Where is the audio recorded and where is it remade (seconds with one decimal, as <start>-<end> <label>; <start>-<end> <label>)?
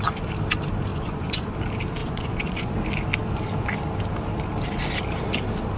0.0-0.9 recorded; 0.9-1.5 remade; 1.5-2.0 recorded; 2.0-2.7 remade; 2.7-5.8 recorded